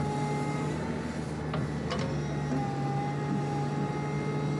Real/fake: real